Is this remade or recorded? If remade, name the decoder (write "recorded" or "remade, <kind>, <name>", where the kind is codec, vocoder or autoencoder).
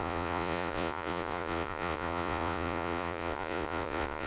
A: remade, vocoder, Vocos